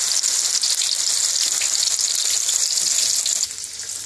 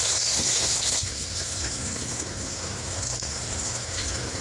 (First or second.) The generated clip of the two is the second